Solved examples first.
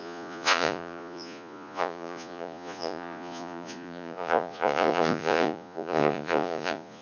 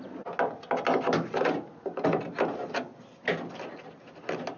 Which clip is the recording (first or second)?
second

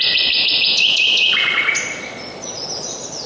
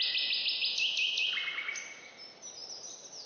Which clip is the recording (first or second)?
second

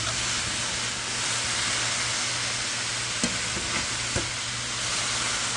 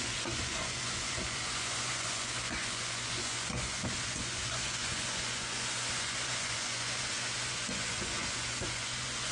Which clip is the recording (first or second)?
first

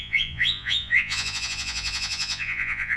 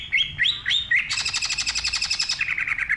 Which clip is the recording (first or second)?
second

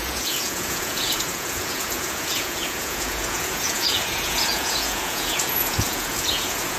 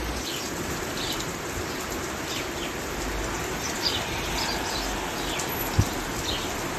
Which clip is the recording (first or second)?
second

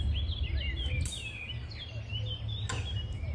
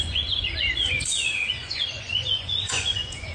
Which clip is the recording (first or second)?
first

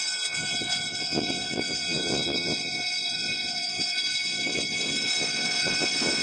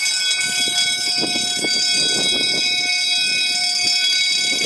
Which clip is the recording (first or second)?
second